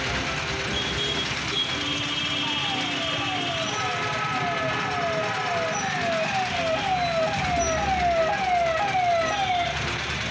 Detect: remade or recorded recorded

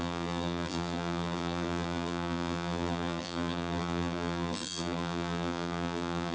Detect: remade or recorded remade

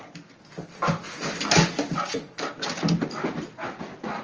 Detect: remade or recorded recorded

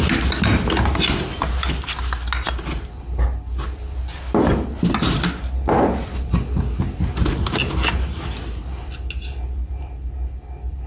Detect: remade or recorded recorded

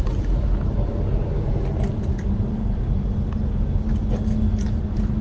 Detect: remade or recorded recorded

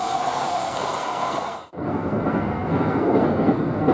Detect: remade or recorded remade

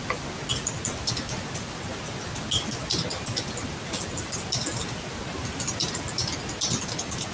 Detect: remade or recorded recorded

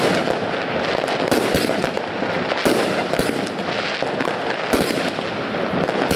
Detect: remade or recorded recorded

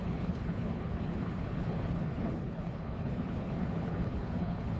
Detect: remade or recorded remade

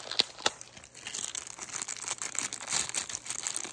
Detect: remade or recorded recorded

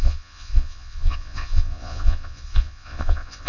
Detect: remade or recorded remade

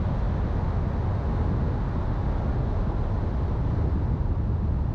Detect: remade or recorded recorded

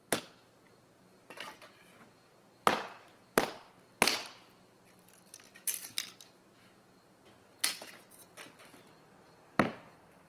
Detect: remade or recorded recorded